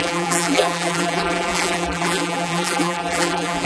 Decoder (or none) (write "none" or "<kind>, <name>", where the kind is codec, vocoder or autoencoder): vocoder, BigVGAN v2